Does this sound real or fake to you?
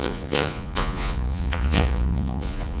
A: fake